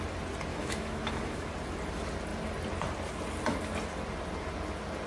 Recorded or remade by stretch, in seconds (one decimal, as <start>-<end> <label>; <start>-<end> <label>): 0.0-0.5 recorded; 0.5-1.5 remade; 1.5-5.1 recorded